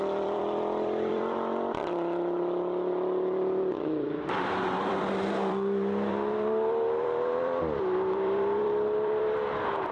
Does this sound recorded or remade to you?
remade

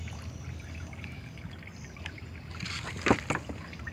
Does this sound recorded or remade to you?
recorded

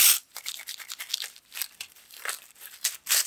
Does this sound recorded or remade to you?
remade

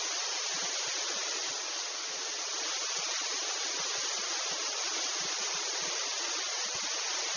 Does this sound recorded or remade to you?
recorded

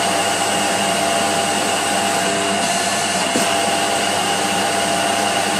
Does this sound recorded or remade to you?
recorded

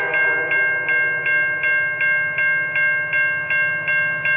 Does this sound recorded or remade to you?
recorded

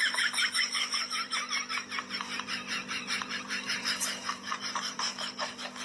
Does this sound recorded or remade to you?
remade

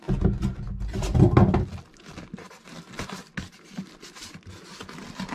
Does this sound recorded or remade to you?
recorded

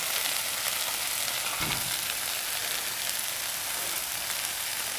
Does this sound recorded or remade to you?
recorded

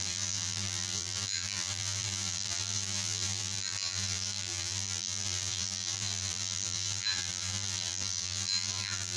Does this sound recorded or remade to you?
remade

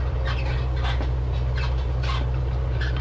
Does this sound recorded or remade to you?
recorded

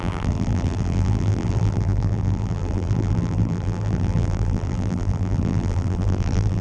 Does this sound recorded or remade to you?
remade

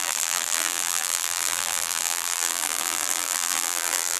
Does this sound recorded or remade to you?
remade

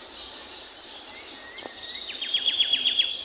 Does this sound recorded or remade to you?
remade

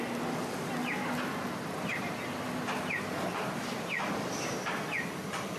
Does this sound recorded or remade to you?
recorded